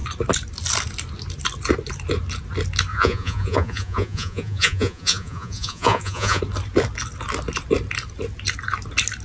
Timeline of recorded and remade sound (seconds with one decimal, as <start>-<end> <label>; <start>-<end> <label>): 0.0-2.9 recorded; 2.9-6.4 remade; 6.4-9.2 recorded